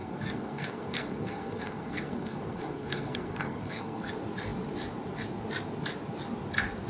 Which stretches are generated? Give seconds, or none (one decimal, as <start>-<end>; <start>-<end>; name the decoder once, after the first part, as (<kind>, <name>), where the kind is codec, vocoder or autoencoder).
0.0-4.1 (codec, SNAC)